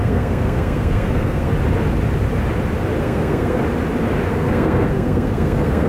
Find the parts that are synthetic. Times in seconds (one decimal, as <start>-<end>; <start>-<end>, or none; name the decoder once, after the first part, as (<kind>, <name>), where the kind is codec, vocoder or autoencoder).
0.0-1.5 (codec, SNAC); 3.0-3.6; 4.3-5.9